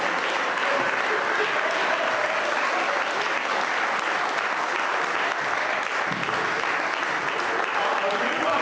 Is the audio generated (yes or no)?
no